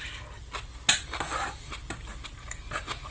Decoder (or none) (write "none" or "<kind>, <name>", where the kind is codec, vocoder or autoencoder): none